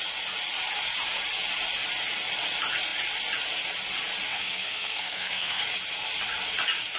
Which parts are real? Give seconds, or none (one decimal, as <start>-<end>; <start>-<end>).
0.0-4.3; 5.6-7.0